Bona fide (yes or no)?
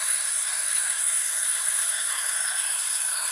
no